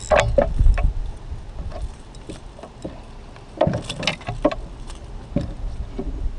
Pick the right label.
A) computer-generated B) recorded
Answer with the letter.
B